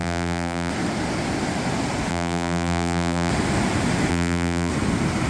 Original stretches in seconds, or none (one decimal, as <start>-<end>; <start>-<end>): 0.7-2.1; 3.3-4.1; 4.7-5.3